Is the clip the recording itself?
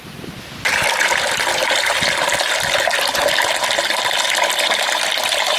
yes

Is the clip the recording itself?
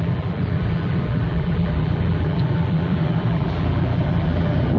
no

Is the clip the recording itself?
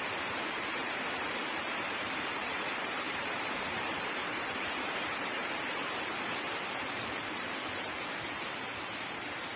no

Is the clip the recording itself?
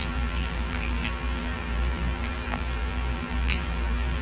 no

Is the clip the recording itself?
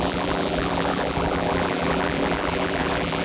no